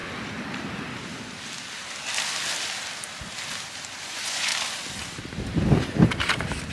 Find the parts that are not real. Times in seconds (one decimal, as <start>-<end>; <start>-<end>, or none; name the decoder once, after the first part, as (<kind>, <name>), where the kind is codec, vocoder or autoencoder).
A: 4.0-4.5 (vocoder, Vocos)